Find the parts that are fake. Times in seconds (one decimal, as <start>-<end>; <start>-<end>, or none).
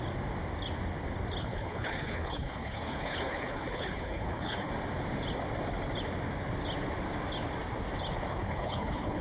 1.4-4.7; 8.3-9.2